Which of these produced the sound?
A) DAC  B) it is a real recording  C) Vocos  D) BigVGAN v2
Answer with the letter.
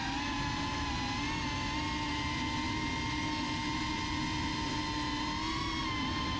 B